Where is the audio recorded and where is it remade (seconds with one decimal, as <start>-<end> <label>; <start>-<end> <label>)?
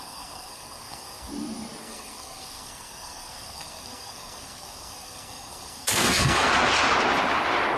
0.0-1.3 remade; 1.3-1.8 recorded; 1.8-6.5 remade; 6.5-7.8 recorded